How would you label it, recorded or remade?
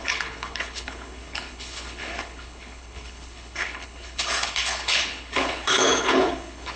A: remade